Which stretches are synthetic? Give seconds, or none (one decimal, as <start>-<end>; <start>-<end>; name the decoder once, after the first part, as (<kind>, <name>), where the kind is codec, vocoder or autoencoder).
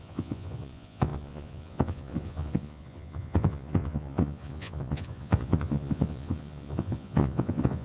0.0-7.8 (vocoder, Vocos)